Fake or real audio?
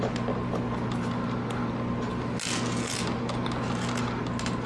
real